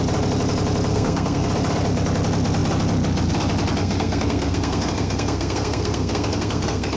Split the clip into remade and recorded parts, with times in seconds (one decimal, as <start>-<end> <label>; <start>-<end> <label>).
0.0-0.9 recorded; 0.9-1.5 remade; 1.5-3.8 recorded; 3.8-7.0 remade